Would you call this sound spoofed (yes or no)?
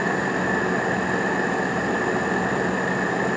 no